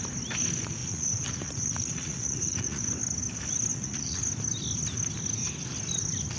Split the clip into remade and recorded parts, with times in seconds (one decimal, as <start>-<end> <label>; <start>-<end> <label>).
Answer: 0.0-0.8 recorded; 0.8-2.9 remade; 2.9-3.7 recorded; 3.7-4.2 remade; 4.2-6.4 recorded